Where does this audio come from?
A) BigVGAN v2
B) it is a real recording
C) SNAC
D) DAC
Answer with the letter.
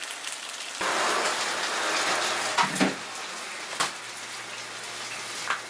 B